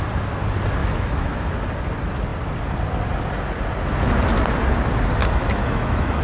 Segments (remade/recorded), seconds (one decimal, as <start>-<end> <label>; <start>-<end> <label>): 0.0-0.8 recorded; 0.8-1.5 remade; 1.5-5.2 recorded; 5.2-6.2 remade